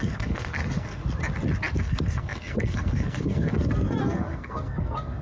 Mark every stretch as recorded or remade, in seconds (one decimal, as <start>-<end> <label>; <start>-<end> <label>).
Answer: 0.0-1.0 remade; 1.0-1.8 recorded; 1.8-5.2 remade